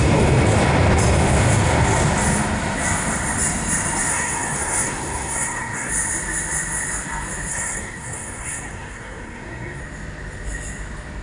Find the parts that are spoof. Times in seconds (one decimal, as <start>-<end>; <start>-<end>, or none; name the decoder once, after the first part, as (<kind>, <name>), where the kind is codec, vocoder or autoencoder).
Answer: 4.1-5.9 (codec, SNAC); 7.5-9.8